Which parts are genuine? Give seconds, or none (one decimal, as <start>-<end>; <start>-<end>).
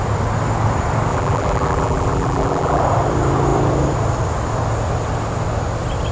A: 0.0-1.1; 2.8-6.1